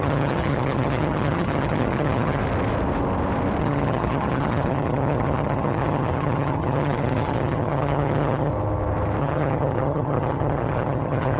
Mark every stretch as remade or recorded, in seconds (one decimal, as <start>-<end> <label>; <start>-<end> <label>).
0.0-2.4 remade; 2.4-3.6 recorded; 3.6-8.5 remade; 8.5-9.2 recorded; 9.2-11.4 remade